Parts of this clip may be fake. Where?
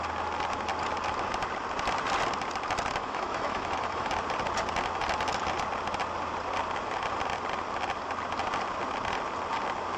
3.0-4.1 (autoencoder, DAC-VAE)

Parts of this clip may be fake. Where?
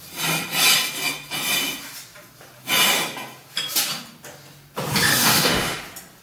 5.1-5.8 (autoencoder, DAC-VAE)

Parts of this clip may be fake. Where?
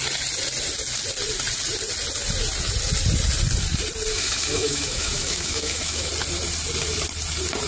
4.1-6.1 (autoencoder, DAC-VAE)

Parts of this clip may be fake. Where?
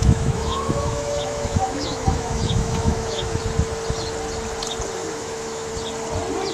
0.0-3.4 (autoencoder, DAC-VAE); 5.0-5.7